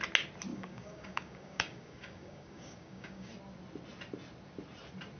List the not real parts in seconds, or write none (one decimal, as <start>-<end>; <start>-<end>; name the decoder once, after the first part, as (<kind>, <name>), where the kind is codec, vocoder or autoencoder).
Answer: 0.5-3.3 (codec, DAC)